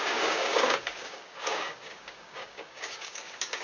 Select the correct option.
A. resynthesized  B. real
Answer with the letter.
A